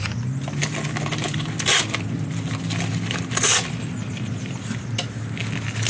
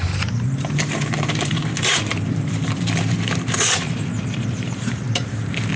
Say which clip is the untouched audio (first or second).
first